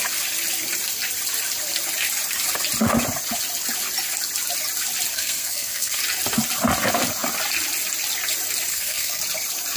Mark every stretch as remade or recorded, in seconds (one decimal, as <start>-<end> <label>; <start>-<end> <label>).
0.0-5.1 recorded; 5.1-6.0 remade; 6.0-8.7 recorded; 8.7-9.2 remade; 9.2-9.8 recorded